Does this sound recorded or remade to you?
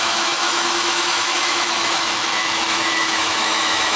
remade